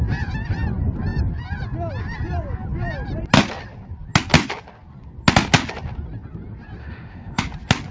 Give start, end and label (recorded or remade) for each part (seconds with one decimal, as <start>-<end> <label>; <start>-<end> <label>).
0.0-6.8 recorded; 6.8-7.4 remade; 7.4-7.9 recorded